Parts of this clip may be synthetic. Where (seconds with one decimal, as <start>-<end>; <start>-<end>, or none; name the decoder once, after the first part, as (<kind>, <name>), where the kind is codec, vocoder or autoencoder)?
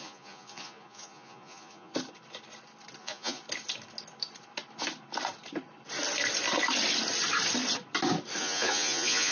0.0-1.9 (vocoder, Vocos); 3.0-3.4; 8.4-9.3